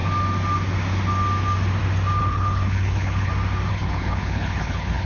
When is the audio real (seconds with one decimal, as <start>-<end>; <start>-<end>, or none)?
0.0-2.2; 3.3-3.7